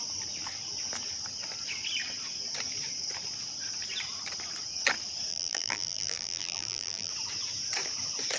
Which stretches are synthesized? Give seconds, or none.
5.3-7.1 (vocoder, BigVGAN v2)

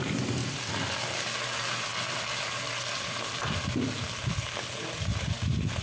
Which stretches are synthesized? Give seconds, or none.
0.0-1.9 (vocoder, BigVGAN v2); 4.2-5.8

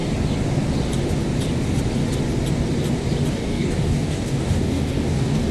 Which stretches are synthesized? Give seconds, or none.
3.3-5.5 (codec, DAC)

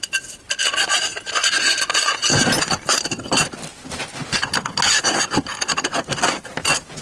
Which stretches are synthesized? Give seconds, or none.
1.4-3.0 (vocoder, Vocos)

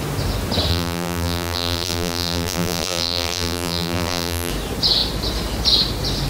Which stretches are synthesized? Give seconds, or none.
0.7-4.5 (vocoder, BigVGAN v2)

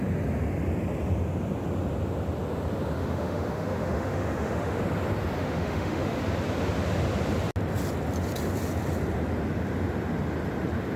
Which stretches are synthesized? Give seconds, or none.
3.0-4.8 (autoencoder, DAC-VAE); 5.4-6.2